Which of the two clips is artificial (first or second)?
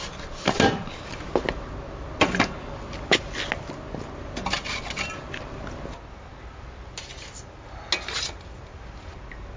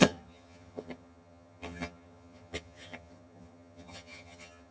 second